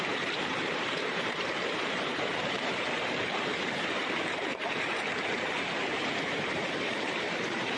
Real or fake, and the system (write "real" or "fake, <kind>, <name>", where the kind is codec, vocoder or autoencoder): fake, vocoder, BigVGAN v2